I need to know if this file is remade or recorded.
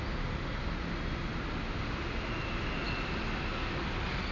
recorded